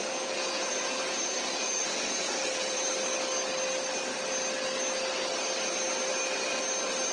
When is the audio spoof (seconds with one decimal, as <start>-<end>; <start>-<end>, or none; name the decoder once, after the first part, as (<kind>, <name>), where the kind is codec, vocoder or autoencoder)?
0.0-2.9 (vocoder, Vocos)